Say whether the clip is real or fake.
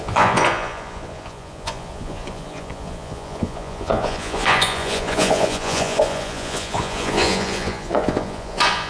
fake